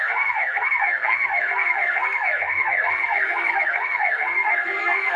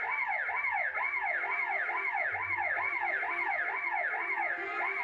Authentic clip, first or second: second